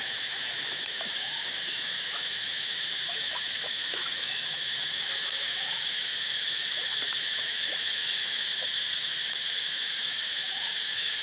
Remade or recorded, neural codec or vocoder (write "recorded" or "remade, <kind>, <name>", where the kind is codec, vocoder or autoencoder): remade, autoencoder, DAC-VAE